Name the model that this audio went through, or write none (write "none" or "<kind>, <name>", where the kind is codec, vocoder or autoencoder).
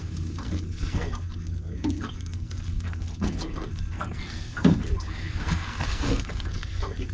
codec, SNAC